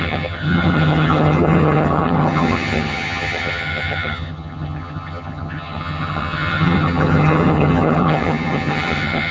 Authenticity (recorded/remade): remade